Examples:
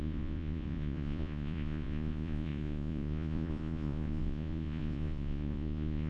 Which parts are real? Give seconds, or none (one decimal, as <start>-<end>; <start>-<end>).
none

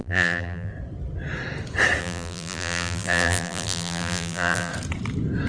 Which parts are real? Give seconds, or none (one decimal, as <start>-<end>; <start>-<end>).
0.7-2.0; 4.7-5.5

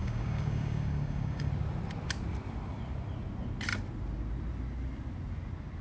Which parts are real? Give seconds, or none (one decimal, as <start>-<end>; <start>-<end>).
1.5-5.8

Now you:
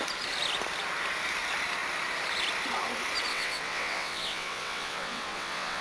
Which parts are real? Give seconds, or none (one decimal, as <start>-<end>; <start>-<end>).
0.0-3.3

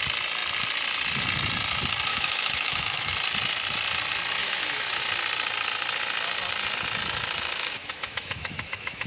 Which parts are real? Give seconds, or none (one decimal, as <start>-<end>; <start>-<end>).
0.0-2.1; 3.1-4.4; 5.0-7.8

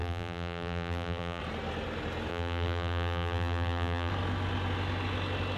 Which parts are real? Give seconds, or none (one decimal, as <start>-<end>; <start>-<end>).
1.4-2.3; 4.1-5.6

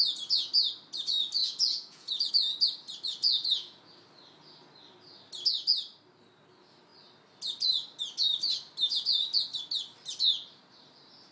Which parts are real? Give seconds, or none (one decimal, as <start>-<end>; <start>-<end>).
0.0-1.4; 2.3-3.2; 3.8-11.3

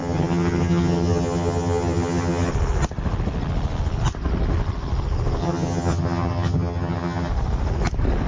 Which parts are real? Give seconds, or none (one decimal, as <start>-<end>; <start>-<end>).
2.5-5.4; 7.3-8.3